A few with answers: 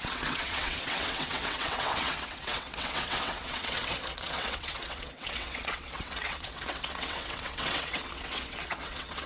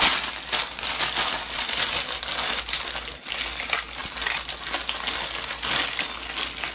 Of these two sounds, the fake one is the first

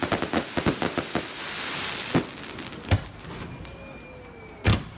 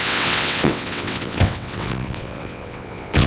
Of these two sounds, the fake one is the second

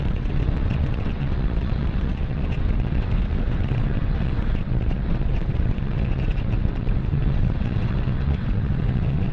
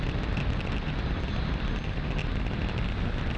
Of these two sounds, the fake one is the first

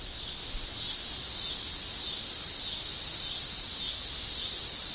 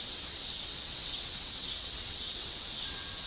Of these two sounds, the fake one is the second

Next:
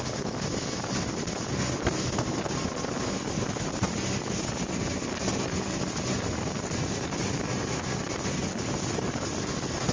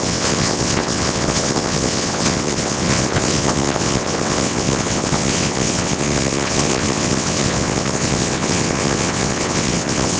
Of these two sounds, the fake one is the second